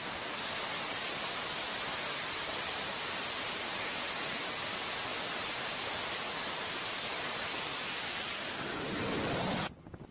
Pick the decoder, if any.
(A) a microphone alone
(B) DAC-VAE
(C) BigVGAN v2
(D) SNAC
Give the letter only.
A